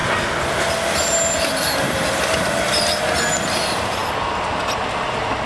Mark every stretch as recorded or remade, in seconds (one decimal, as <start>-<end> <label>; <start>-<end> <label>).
0.0-5.5 recorded